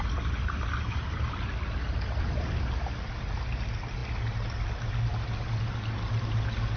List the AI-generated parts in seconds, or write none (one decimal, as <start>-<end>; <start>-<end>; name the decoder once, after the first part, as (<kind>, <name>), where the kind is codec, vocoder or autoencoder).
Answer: none